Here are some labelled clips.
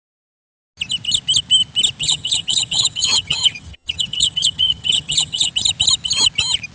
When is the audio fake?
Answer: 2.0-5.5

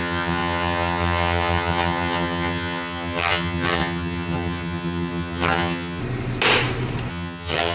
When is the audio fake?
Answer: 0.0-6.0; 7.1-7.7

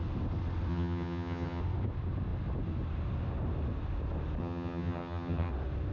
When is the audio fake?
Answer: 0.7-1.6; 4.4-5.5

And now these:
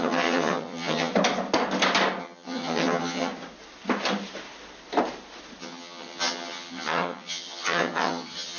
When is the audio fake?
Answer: 0.0-1.1; 2.2-3.3; 5.6-8.6